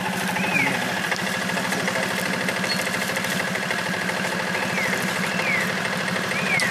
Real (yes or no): yes